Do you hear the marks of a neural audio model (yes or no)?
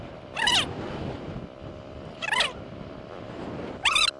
no